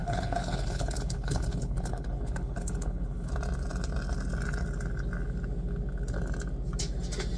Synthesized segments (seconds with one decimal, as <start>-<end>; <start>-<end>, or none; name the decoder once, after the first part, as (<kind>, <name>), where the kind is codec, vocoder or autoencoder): 0.0-3.3 (codec, HILCodec)